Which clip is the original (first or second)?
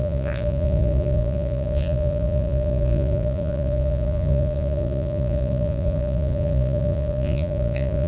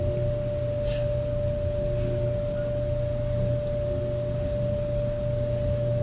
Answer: second